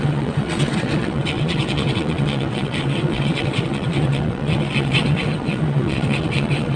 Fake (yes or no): yes